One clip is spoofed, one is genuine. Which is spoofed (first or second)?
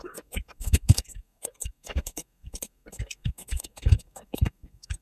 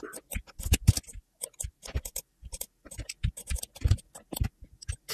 first